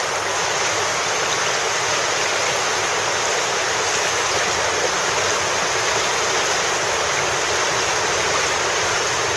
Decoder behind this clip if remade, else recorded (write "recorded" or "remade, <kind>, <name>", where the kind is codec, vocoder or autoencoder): recorded